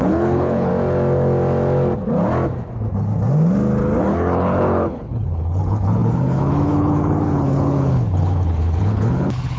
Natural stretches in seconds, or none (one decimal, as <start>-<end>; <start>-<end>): 0.7-4.0